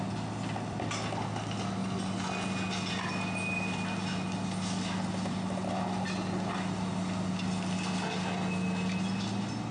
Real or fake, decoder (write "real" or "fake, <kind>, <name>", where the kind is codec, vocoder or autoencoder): real